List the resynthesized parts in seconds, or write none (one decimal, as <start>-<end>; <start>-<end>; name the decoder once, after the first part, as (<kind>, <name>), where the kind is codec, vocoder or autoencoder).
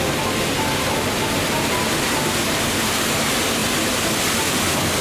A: none